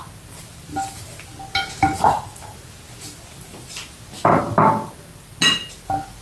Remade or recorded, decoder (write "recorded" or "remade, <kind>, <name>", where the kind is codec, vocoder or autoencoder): recorded